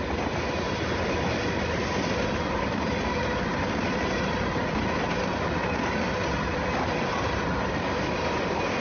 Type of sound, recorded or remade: recorded